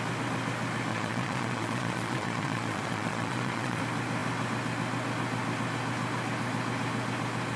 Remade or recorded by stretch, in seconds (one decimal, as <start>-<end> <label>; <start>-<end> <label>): 0.0-0.9 recorded; 0.9-3.8 remade; 3.8-7.6 recorded